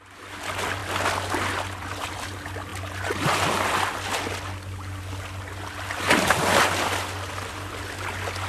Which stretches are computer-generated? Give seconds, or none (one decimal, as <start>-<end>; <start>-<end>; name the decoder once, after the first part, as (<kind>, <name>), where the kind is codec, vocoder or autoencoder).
none